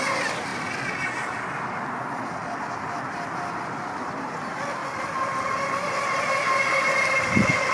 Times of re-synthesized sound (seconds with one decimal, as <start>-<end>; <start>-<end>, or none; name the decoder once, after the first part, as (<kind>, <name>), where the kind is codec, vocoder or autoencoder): none